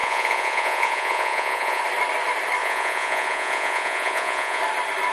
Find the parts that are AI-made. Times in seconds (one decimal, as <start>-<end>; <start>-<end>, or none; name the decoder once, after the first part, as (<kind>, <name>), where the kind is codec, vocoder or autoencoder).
0.0-1.8 (vocoder, Vocos); 2.6-4.6